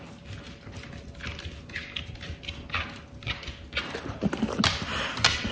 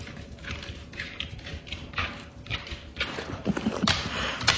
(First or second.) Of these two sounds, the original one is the first